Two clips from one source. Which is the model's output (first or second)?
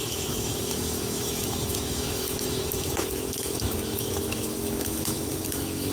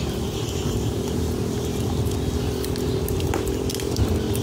first